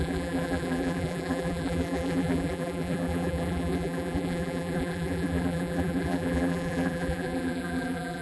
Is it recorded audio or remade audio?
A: remade